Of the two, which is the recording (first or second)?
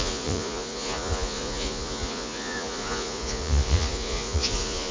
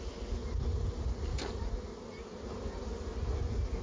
second